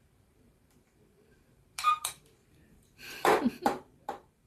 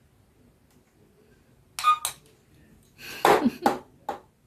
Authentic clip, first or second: second